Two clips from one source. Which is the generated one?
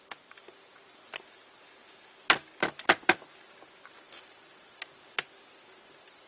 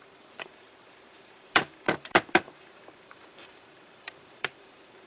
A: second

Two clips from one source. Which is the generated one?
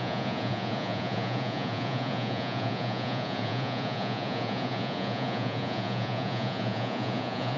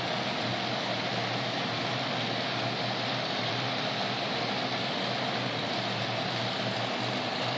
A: first